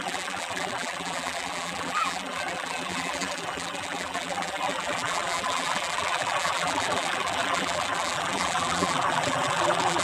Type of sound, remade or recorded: remade